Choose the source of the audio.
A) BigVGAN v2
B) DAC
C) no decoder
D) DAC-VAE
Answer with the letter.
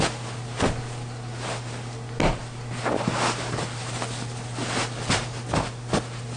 C